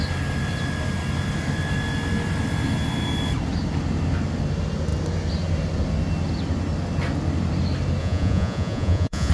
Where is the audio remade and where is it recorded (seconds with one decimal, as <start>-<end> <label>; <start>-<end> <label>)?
0.0-8.0 recorded; 8.0-9.3 remade